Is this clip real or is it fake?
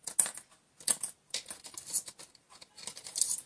real